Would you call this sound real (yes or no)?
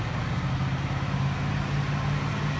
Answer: yes